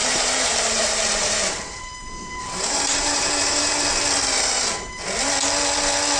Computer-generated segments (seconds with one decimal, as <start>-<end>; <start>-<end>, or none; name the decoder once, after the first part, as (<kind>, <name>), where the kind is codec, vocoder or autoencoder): 0.0-3.7 (vocoder, BigVGAN v2)